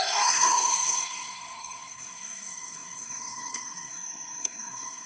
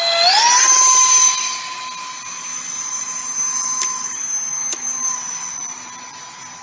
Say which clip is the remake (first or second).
first